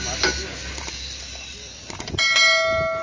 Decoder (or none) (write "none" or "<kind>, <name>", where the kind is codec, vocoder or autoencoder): none